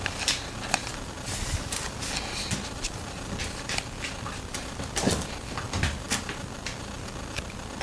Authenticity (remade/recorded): recorded